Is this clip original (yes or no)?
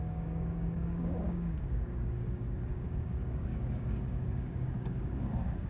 no